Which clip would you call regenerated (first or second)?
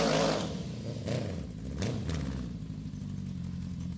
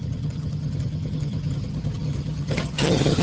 second